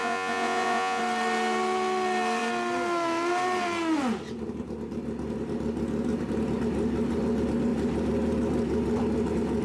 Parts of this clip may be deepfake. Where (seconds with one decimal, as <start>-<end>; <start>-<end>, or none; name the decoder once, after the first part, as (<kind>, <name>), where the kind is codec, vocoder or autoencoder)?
0.0-1.0 (vocoder, Vocos)